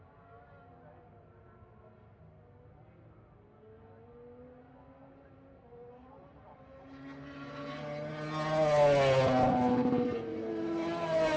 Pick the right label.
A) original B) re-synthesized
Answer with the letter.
A